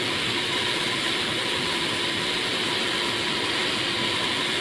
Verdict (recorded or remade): recorded